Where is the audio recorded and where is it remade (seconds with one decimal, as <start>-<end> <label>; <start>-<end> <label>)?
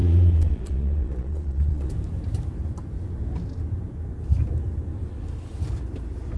0.0-1.9 remade; 1.9-6.4 recorded